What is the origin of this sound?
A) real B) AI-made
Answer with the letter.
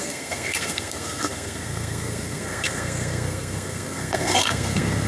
B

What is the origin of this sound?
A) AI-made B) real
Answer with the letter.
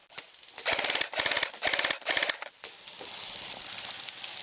B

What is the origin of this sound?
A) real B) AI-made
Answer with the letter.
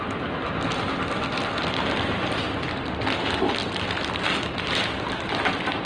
A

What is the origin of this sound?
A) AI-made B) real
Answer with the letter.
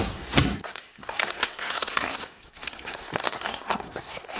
A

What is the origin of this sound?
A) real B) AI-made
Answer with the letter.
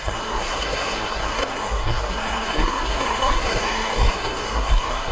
B